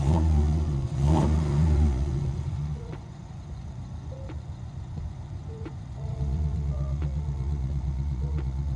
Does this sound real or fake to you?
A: fake